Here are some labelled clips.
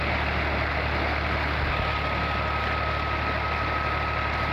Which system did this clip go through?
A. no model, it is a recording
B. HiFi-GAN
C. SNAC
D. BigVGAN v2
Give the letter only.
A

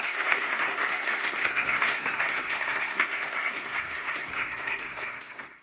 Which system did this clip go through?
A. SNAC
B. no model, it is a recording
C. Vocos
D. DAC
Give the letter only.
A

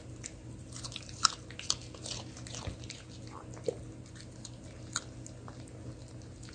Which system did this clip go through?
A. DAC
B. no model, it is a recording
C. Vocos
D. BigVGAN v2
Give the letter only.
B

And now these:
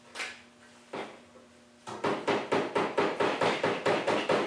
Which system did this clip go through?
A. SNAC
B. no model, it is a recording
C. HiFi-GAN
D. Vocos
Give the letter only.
B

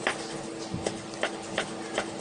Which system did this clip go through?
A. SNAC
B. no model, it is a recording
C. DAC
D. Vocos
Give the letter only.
B